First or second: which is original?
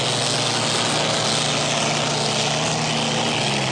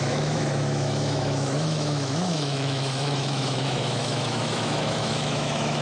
first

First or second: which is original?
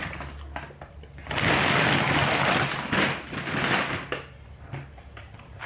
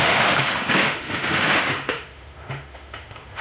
first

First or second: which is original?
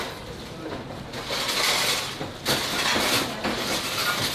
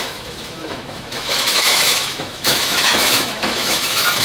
first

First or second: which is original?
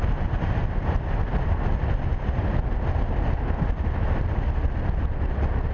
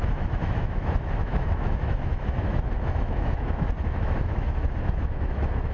first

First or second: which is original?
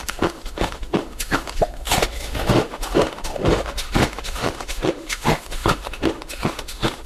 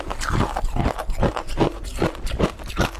second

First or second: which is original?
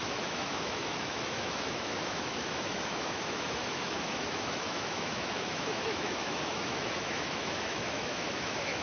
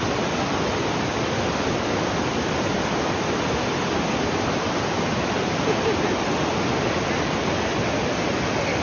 second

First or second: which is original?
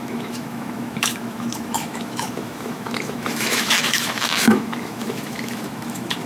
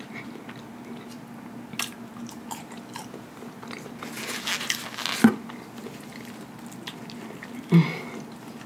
second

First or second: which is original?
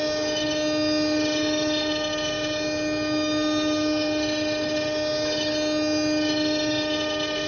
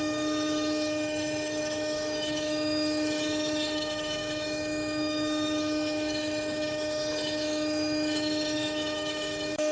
first